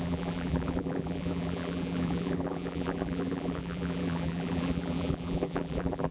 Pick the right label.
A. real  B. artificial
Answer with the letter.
B